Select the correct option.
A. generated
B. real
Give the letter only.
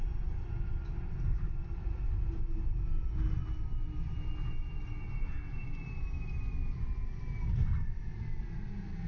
B